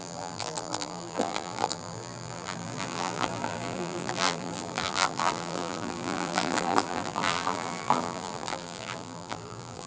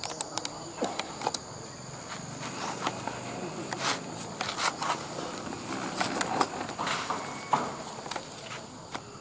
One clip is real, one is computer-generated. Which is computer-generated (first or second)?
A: first